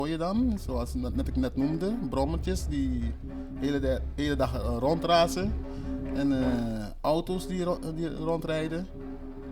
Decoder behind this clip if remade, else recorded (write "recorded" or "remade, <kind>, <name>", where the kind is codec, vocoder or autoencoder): recorded